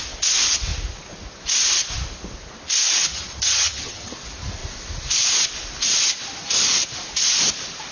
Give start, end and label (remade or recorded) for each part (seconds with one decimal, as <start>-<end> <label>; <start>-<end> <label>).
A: 0.0-3.1 recorded; 3.1-4.1 remade; 4.1-7.9 recorded